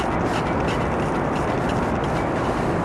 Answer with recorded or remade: recorded